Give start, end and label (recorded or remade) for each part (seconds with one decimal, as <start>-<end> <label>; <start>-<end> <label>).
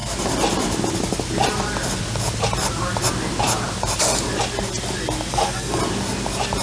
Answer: 0.0-5.3 recorded; 5.3-5.8 remade; 5.8-6.6 recorded